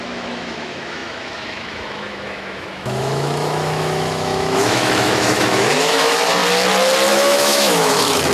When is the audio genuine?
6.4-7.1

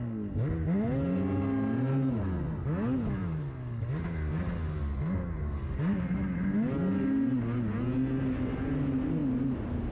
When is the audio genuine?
0.0-9.9